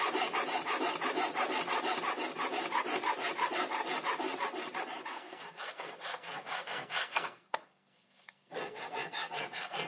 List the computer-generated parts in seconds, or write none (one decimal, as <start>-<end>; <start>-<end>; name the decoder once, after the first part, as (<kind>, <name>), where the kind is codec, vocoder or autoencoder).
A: 5.1-9.9 (codec, SNAC)